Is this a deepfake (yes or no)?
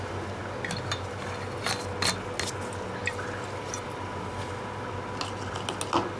no